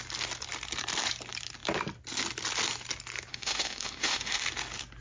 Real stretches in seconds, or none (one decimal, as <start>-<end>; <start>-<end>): 0.0-3.3; 4.4-5.0